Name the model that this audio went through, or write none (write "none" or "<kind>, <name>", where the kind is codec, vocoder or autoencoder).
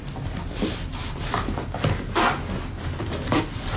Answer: none